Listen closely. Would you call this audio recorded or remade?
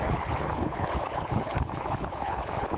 remade